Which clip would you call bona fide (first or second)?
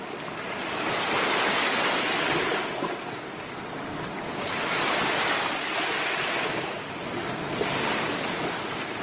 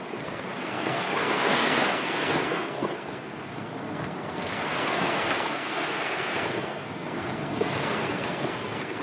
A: first